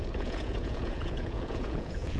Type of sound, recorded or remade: remade